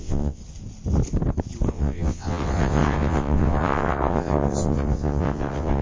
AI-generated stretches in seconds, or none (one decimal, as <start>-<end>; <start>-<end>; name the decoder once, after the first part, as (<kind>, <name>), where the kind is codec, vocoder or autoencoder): 0.0-0.4 (vocoder, WaveNeXt); 1.7-5.8